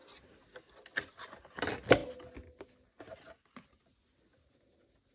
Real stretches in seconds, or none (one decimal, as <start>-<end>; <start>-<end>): 0.0-5.1